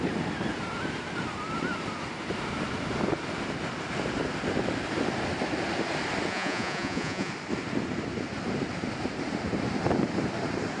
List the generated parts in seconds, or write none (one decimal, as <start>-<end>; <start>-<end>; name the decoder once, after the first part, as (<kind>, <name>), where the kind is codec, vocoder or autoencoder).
6.3-7.3 (vocoder, Vocos)